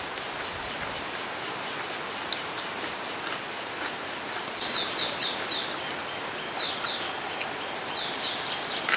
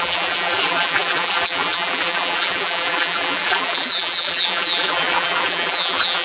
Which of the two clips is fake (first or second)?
second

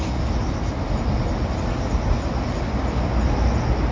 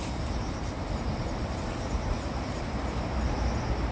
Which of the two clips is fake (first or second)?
second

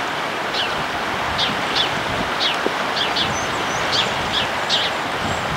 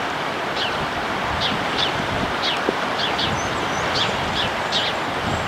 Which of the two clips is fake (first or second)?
second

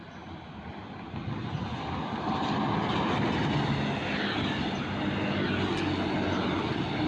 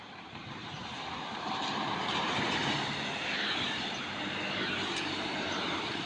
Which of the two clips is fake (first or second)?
second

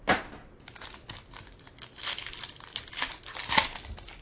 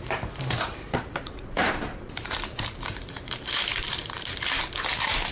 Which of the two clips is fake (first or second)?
second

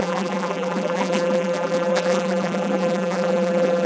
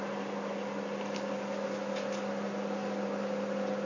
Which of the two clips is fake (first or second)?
first